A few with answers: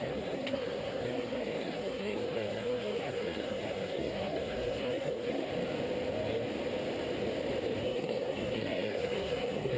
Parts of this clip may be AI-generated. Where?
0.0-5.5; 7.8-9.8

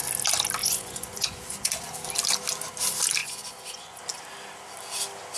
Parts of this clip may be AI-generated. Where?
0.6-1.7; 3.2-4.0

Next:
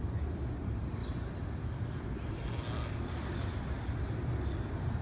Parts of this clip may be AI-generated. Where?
none

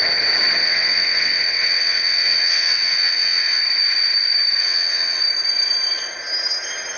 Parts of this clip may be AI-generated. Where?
0.6-3.6; 4.6-5.2

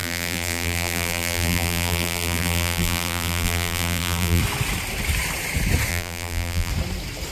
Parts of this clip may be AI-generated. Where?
0.0-4.4; 5.9-6.7